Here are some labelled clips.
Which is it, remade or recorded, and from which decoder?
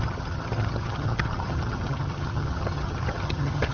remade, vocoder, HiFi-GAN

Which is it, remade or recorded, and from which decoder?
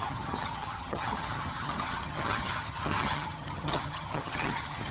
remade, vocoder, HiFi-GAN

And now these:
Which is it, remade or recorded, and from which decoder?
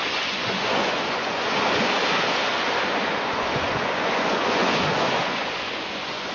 remade, vocoder, Vocos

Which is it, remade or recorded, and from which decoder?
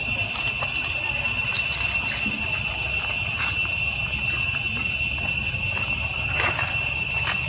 recorded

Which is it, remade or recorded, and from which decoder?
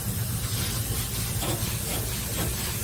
recorded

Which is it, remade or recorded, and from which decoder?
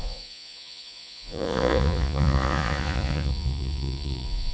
remade, vocoder, Vocos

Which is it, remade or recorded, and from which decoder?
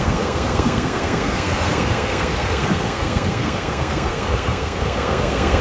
remade, codec, SNAC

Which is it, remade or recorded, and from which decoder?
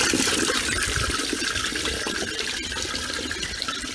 recorded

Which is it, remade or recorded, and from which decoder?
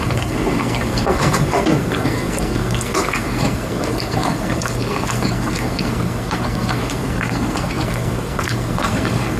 remade, codec, SNAC